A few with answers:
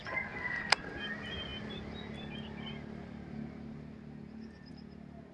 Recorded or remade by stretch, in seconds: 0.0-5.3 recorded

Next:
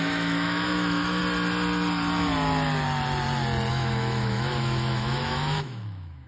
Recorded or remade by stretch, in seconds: 0.0-1.2 remade; 1.2-3.7 recorded; 3.7-6.3 remade

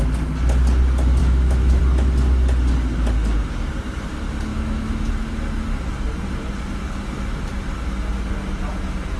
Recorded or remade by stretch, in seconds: 0.0-1.2 recorded; 1.2-1.8 remade; 1.8-4.5 recorded; 4.5-5.1 remade; 5.1-9.2 recorded

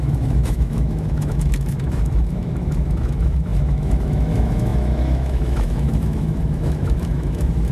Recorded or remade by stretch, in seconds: 0.0-7.7 remade

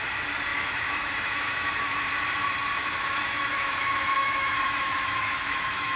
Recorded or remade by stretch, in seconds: 0.0-0.5 recorded; 0.5-2.0 remade; 2.0-2.8 recorded; 2.8-6.0 remade

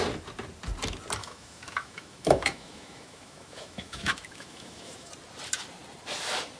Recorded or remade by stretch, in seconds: 0.0-1.2 recorded; 1.2-5.1 remade; 5.1-6.6 recorded

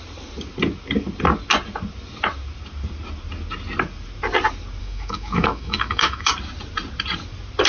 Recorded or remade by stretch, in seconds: 0.0-4.8 recorded; 4.8-6.3 remade; 6.3-7.7 recorded